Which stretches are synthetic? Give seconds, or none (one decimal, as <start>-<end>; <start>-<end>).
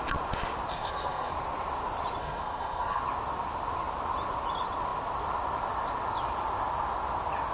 0.7-1.3; 2.2-3.0